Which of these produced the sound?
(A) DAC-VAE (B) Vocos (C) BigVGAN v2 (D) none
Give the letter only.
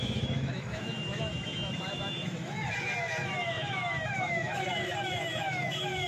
A